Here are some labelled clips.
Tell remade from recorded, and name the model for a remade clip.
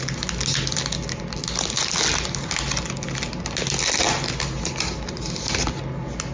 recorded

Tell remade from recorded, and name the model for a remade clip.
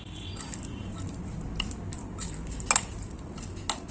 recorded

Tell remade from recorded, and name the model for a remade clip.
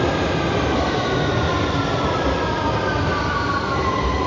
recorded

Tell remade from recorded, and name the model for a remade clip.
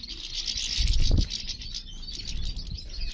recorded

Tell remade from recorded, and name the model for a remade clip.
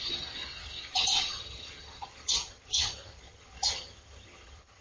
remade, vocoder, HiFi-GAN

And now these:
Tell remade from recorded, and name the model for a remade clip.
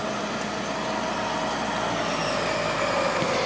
recorded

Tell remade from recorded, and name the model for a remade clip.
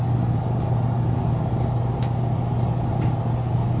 recorded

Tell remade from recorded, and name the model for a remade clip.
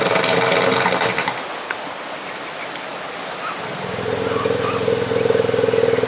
recorded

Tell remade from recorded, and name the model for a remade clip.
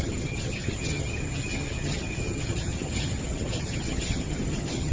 remade, vocoder, HiFi-GAN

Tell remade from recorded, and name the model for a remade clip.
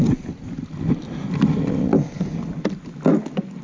recorded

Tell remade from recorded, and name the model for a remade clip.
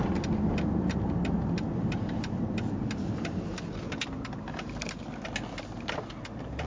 recorded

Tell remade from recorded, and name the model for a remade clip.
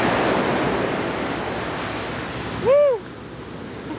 recorded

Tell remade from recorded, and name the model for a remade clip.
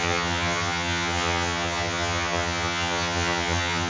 remade, vocoder, HiFi-GAN